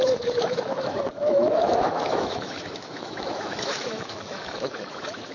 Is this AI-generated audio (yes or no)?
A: yes